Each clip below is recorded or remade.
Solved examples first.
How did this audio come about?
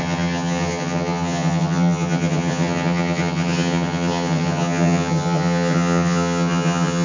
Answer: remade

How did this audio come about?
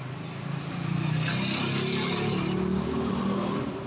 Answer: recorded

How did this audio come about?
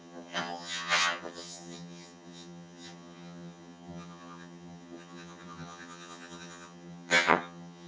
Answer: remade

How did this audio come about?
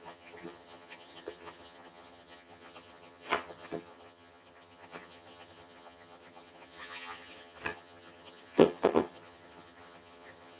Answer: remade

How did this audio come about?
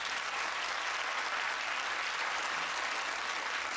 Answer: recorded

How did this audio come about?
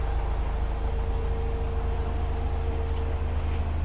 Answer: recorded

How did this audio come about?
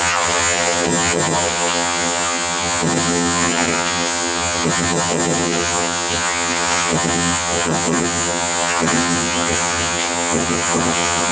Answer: remade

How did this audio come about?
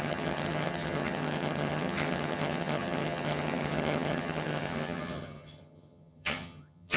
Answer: remade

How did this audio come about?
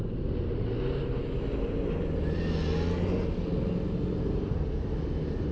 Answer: recorded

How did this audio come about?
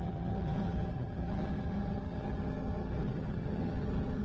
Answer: remade